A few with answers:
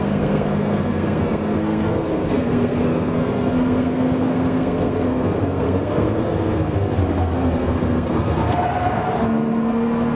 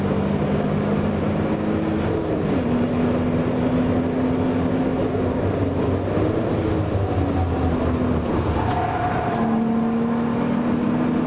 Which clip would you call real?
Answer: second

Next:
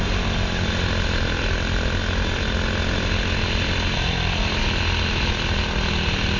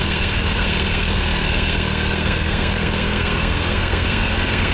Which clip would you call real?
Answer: first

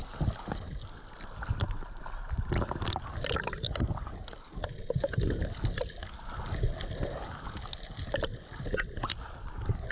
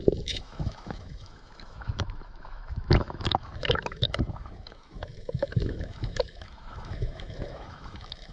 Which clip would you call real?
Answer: first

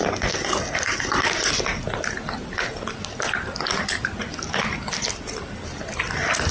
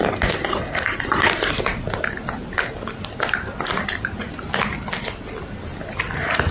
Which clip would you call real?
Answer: first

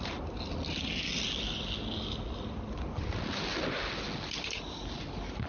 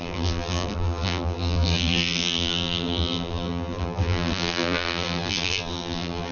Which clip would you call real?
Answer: first